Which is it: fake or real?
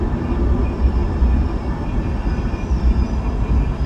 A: real